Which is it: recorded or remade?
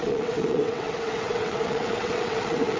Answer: remade